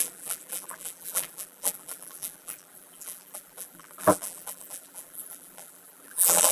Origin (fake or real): fake